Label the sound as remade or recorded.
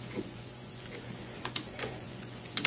remade